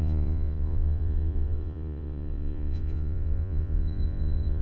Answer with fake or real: fake